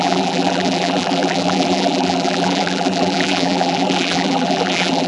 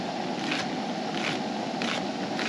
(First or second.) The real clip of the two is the second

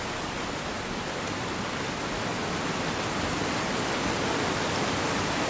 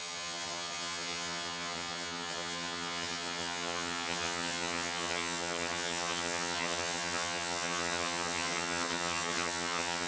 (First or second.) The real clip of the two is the first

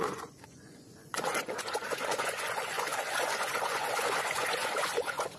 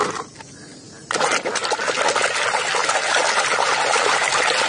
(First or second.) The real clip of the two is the second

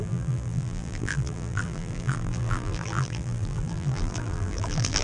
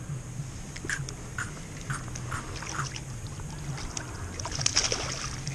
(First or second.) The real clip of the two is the second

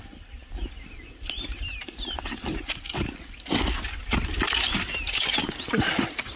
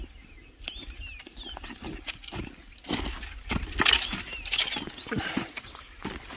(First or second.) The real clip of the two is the second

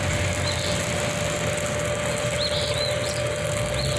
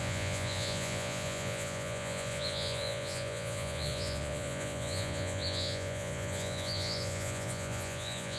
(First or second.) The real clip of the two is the first